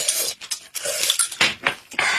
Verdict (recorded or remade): recorded